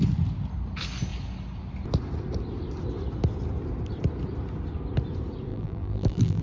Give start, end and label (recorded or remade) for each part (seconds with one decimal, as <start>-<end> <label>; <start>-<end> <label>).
0.0-5.5 recorded; 5.5-6.4 remade